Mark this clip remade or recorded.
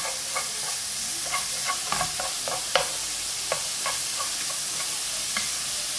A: recorded